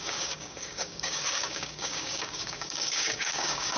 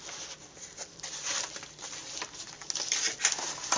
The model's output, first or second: first